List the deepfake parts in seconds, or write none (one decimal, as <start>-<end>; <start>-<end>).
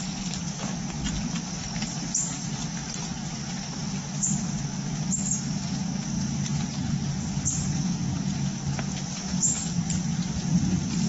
0.0-4.0; 8.1-11.1